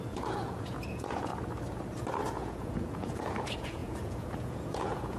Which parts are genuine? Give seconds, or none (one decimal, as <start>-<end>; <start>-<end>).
1.3-2.3